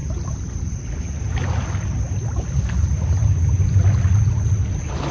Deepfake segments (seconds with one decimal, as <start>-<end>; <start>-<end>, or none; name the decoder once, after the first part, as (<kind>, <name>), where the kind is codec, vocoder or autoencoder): none